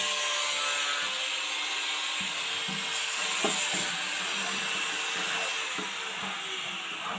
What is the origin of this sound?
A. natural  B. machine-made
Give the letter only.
A